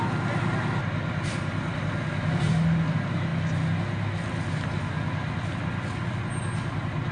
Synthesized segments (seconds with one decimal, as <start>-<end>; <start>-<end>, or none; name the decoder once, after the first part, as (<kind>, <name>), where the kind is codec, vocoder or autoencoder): none